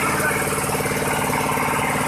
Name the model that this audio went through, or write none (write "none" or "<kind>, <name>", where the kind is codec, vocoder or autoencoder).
none